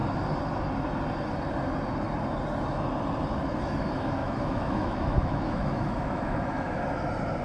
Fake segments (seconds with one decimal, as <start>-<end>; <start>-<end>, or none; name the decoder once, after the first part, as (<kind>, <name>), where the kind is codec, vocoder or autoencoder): 4.2-6.8 (autoencoder, DAC-VAE)